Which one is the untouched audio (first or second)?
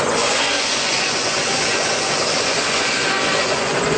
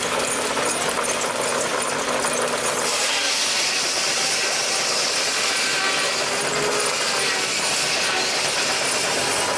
second